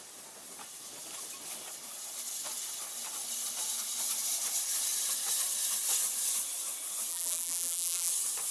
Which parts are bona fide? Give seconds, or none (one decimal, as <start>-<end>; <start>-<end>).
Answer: 0.0-7.1; 8.1-8.5